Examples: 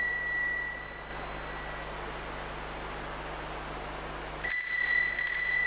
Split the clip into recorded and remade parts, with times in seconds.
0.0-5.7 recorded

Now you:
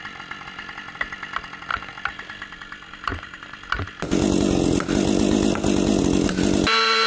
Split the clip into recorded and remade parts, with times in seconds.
0.0-7.1 recorded

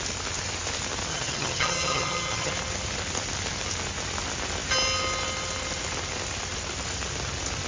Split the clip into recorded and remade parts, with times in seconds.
0.0-1.1 recorded; 1.1-2.5 remade; 2.5-7.7 recorded